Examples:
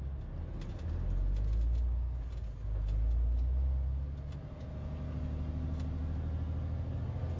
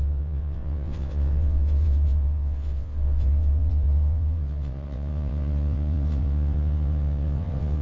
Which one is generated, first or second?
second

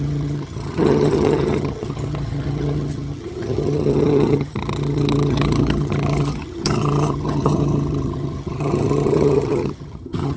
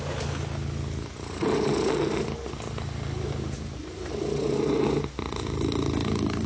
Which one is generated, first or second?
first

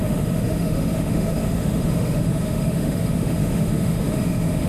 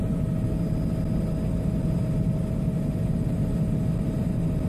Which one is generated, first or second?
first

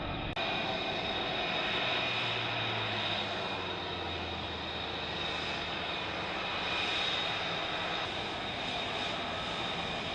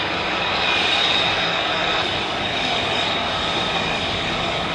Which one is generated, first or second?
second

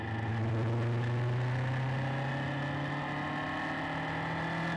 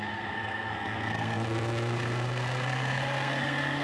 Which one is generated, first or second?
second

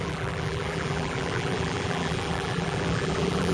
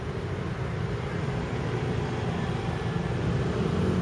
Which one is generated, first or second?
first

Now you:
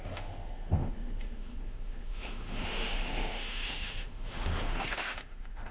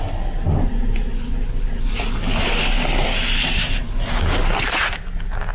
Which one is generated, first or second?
first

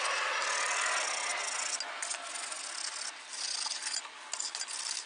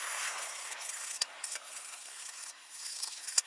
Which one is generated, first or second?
second